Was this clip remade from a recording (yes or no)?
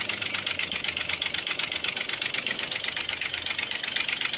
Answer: no